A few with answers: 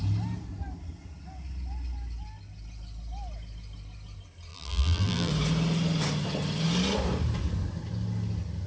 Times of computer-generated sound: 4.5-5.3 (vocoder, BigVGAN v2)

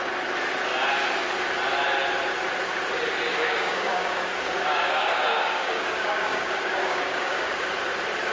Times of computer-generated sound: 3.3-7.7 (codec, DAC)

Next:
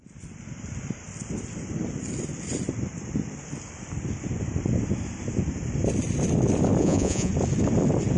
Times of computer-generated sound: 6.8-7.3 (vocoder, Vocos)

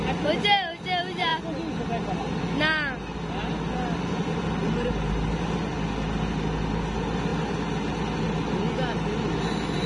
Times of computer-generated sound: none

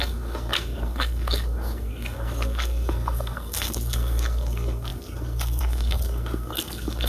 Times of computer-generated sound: 0.0-7.1 (codec, SNAC)